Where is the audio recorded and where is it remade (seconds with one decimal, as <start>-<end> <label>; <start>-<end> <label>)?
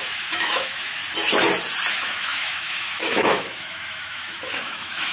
0.0-1.0 remade; 1.0-1.9 recorded; 1.9-5.1 remade